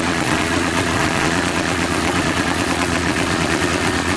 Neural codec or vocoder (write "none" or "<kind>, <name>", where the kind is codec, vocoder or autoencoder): vocoder, Vocos